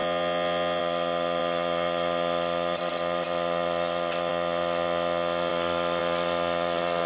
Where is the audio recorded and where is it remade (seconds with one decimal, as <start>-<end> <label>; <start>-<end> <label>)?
0.0-0.8 recorded; 0.8-7.1 remade